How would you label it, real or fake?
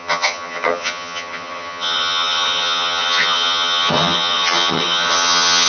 fake